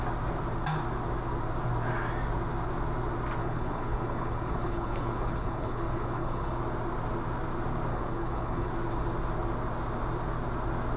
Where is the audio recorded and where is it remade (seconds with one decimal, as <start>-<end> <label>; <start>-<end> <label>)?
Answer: 0.0-3.4 recorded; 3.4-6.6 remade; 6.6-7.9 recorded; 7.9-8.7 remade; 8.7-11.0 recorded